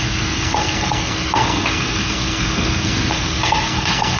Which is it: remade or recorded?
remade